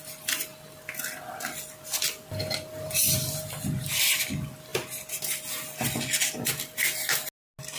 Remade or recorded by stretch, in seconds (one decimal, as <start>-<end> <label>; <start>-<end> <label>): 0.0-7.8 recorded